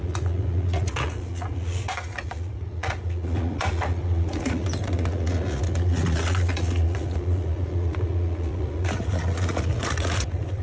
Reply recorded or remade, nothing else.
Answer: remade